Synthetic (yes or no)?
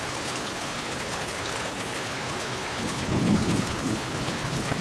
yes